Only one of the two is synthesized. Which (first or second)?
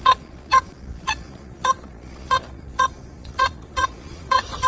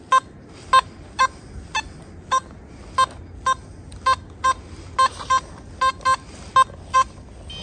first